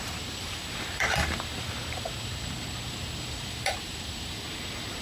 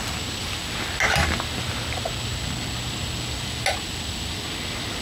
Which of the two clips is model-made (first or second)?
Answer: first